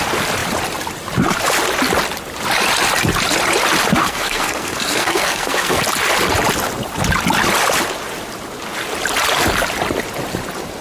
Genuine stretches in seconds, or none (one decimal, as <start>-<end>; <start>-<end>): 0.0-4.0; 5.8-10.8